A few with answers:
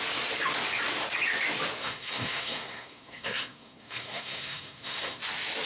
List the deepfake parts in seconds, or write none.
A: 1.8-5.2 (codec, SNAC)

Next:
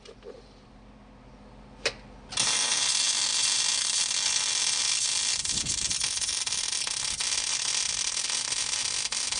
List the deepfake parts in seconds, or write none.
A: none

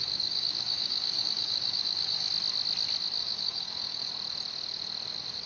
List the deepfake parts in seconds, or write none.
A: 0.0-2.3 (codec, DAC); 3.2-4.1

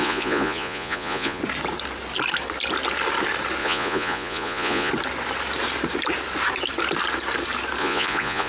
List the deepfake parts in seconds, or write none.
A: 0.0-1.4 (vocoder, Vocos); 3.6-4.9; 7.8-8.5

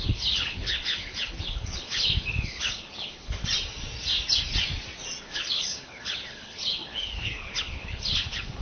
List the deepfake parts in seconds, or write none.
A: 0.0-3.4 (codec, HILCodec); 5.2-8.6

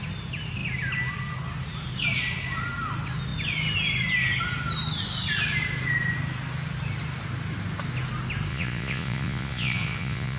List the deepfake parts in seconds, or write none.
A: 8.5-10.4 (vocoder, Vocos)